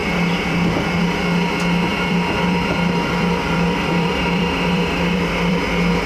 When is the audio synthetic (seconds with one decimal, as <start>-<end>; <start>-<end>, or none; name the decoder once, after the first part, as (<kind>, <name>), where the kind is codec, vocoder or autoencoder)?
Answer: 0.0-0.7 (vocoder, BigVGAN v2); 1.9-5.6